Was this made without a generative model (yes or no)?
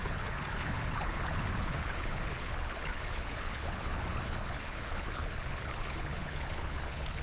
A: no